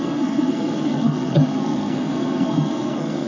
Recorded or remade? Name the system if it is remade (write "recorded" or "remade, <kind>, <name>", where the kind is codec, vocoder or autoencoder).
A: remade, codec, SNAC